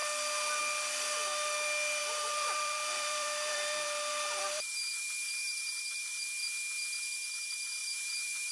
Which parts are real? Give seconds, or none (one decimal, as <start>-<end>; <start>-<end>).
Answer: 0.0-2.0; 6.2-7.8